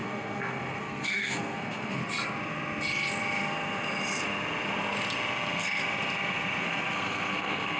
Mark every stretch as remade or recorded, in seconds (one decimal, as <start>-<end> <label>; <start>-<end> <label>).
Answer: 0.0-2.0 remade; 2.0-6.6 recorded; 6.6-7.8 remade